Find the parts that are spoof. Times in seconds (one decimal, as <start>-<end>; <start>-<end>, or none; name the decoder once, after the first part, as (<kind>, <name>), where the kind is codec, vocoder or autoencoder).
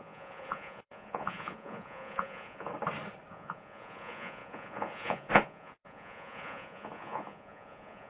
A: 0.0-2.7 (vocoder, Vocos); 3.3-8.1